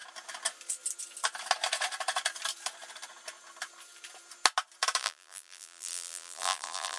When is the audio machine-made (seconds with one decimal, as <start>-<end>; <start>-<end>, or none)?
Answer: 5.0-7.0